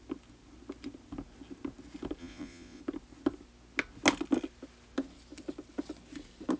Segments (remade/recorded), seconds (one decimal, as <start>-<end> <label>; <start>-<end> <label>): 0.0-2.2 recorded; 2.2-2.8 remade; 2.8-6.6 recorded